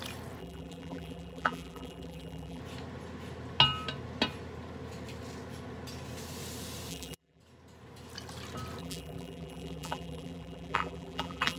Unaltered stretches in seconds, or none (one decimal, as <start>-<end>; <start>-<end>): 0.0-0.4; 2.6-6.9; 7.4-8.8